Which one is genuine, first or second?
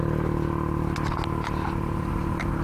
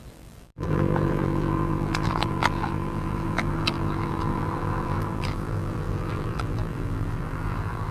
first